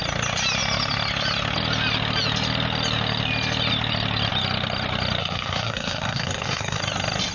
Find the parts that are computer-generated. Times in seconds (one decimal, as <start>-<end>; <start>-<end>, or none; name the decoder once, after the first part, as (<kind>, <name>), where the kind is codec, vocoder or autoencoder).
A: 5.2-6.8 (codec, SNAC)